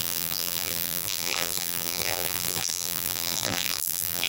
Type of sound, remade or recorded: remade